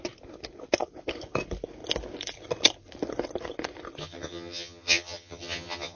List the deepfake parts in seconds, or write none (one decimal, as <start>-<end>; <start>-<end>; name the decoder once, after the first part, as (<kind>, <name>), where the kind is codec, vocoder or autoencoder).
4.0-6.0 (vocoder, HiFi-GAN)